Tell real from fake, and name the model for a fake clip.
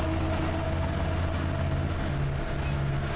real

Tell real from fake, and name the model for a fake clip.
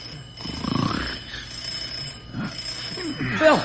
real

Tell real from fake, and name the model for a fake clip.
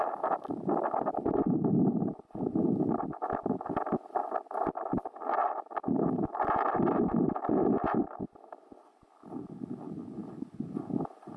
real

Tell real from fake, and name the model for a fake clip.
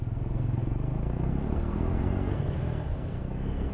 fake, codec, SNAC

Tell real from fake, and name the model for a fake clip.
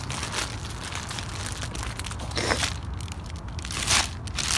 real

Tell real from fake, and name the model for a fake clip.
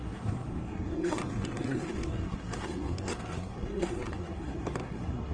fake, codec, SNAC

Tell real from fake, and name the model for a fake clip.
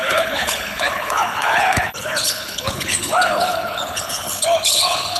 fake, codec, HILCodec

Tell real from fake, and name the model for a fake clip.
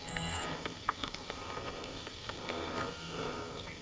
fake, codec, SNAC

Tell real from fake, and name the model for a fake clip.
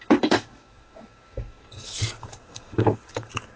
fake, codec, DAC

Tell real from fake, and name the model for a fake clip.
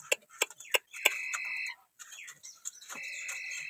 real